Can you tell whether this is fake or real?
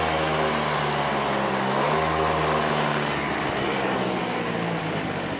real